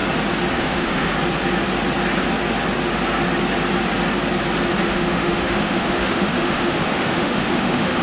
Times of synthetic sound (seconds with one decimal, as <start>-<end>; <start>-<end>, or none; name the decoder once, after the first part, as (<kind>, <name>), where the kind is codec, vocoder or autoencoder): 0.6-1.1 (autoencoder, DAC-VAE); 4.8-8.0